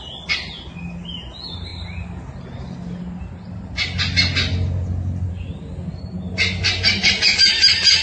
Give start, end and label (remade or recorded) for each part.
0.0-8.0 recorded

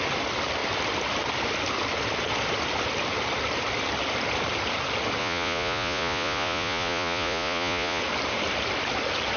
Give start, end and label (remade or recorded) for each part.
0.0-5.2 recorded; 5.2-8.0 remade; 8.0-9.4 recorded